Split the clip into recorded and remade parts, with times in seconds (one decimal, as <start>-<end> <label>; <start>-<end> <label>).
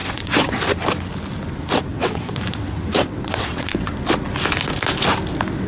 0.0-0.6 remade; 0.6-1.9 recorded; 1.9-3.9 remade; 3.9-5.7 recorded